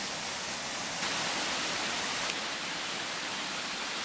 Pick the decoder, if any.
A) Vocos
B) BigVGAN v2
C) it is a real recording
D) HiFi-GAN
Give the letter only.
C